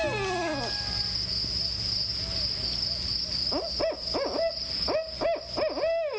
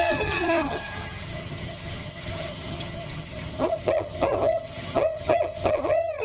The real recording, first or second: first